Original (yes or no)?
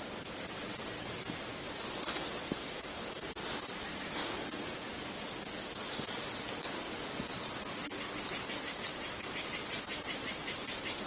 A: yes